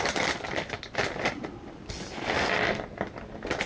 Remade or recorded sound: recorded